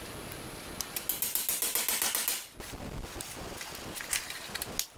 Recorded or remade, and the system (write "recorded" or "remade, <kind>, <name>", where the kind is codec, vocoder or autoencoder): recorded